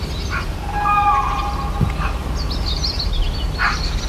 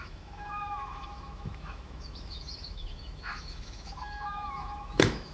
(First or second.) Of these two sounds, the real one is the first